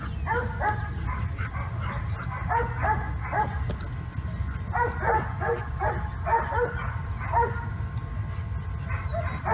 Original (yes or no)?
yes